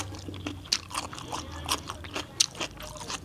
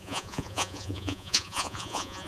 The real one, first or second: first